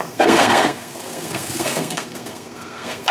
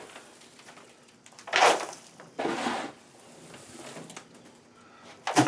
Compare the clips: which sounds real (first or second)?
second